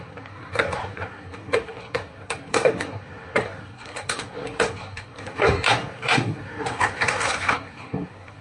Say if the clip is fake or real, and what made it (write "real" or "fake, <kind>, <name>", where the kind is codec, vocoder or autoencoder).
fake, codec, SNAC